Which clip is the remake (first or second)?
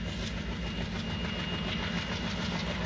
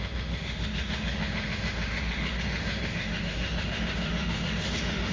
second